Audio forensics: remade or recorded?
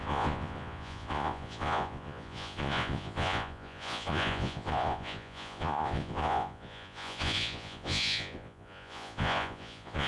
remade